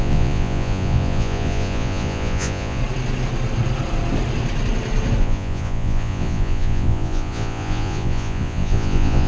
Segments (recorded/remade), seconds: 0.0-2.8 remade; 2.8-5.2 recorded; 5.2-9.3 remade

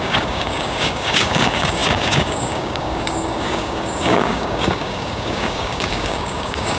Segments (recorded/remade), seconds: 0.0-6.8 remade

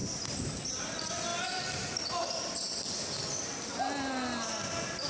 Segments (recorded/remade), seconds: 0.0-5.1 recorded

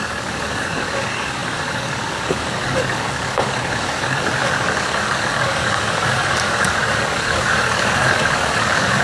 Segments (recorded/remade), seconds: 0.0-9.0 remade

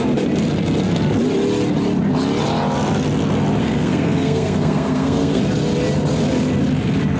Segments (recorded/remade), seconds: 0.0-3.6 recorded; 3.6-5.4 remade; 5.4-7.2 recorded

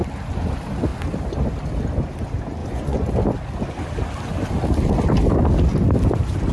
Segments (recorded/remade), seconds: 0.0-2.6 recorded; 2.6-3.1 remade; 3.1-6.5 recorded

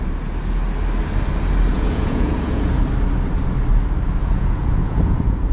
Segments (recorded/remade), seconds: 0.0-1.7 recorded; 1.7-2.7 remade; 2.7-4.2 recorded; 4.2-5.5 remade